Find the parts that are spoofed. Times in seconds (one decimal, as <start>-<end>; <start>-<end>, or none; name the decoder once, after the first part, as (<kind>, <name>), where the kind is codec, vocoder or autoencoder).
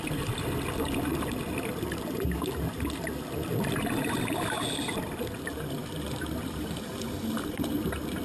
none